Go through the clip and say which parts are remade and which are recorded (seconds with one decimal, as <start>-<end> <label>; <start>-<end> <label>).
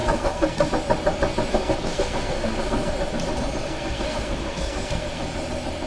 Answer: 0.0-0.7 remade; 0.7-1.5 recorded; 1.5-2.9 remade; 2.9-3.6 recorded; 3.6-5.2 remade; 5.2-5.9 recorded